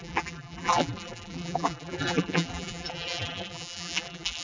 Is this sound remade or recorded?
remade